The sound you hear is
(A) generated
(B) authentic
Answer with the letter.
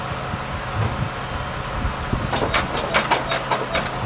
B